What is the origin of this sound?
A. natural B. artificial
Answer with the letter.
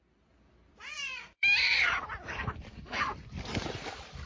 B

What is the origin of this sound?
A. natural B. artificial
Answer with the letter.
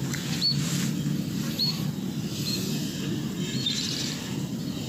A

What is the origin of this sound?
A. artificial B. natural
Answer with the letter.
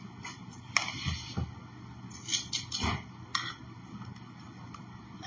B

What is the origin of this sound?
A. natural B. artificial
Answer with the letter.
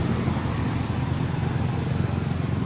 A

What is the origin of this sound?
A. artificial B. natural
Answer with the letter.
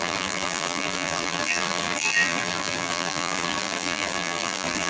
A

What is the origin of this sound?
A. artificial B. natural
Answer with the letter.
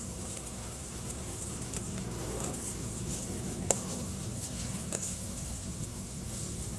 A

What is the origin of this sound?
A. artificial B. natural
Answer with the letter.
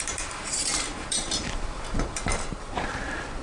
A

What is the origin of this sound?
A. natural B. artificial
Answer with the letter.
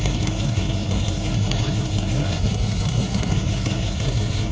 B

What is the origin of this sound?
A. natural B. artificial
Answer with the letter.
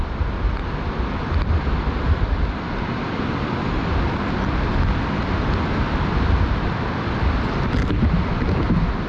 A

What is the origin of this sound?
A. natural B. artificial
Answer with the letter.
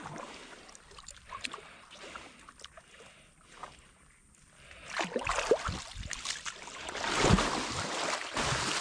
A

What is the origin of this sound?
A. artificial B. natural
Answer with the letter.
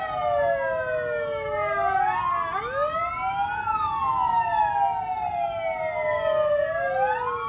B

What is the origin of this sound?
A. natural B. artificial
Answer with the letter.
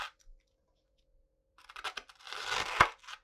A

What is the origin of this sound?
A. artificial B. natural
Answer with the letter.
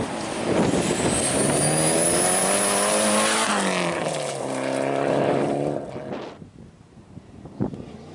B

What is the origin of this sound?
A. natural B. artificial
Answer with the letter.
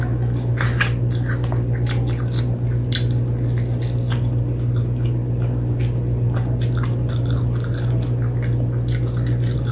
A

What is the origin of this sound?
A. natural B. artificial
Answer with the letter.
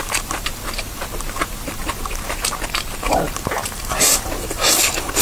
B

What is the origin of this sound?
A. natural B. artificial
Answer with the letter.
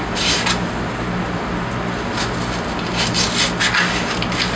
A